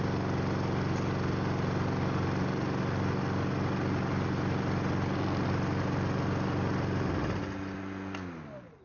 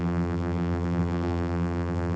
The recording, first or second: first